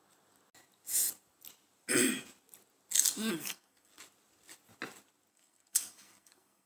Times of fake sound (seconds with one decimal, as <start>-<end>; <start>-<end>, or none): 3.3-3.9; 5.3-6.7